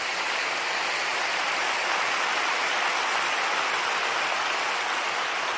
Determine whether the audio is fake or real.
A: real